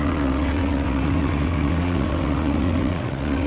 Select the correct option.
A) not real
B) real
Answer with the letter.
A